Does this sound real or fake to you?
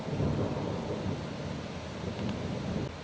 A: real